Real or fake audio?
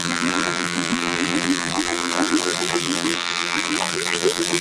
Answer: fake